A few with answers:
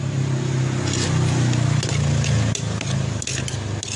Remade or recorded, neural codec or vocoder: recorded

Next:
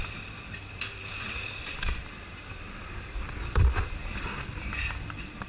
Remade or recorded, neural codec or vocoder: remade, vocoder, BigVGAN v2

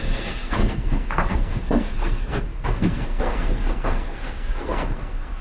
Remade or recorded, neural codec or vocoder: remade, codec, SNAC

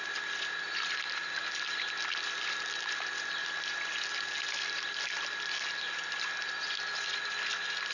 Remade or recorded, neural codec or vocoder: recorded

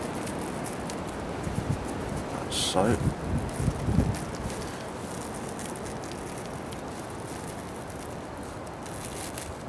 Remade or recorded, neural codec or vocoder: recorded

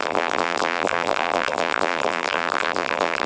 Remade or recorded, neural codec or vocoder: remade, vocoder, BigVGAN v2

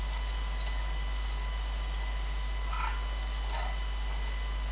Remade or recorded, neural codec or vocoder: recorded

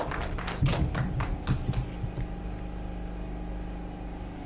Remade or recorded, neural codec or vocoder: recorded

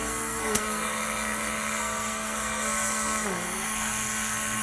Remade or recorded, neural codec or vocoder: remade, codec, SNAC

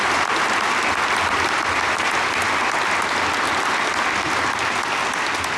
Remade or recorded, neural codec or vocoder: recorded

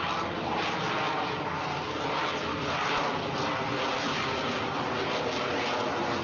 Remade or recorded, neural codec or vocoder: recorded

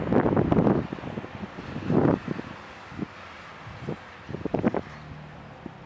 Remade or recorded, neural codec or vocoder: recorded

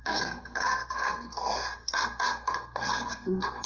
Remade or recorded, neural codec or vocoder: remade, codec, SNAC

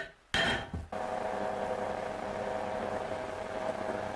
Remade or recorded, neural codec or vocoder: recorded